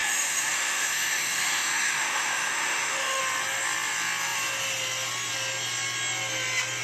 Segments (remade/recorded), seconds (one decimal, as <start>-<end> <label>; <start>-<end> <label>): 0.0-3.2 remade; 3.2-6.8 recorded